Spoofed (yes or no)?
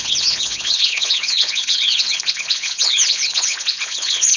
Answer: yes